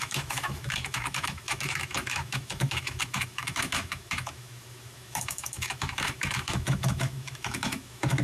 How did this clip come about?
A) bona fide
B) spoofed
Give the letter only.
B